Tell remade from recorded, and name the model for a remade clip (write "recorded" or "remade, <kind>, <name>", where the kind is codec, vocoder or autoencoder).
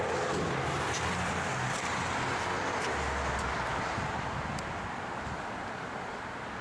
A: recorded